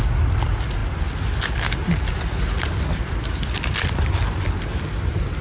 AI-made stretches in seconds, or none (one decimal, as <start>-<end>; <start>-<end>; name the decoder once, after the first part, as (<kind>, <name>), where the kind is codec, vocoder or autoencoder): none